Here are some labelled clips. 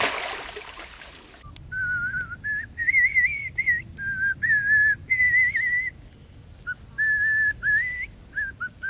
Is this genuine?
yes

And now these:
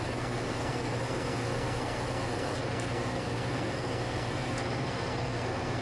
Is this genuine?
no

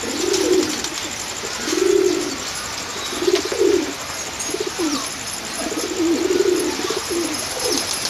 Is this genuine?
yes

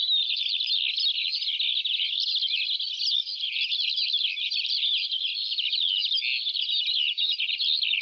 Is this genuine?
yes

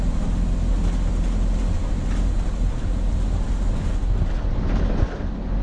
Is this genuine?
yes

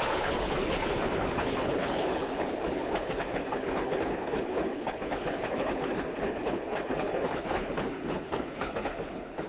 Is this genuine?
no